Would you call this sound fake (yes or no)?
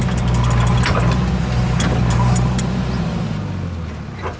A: no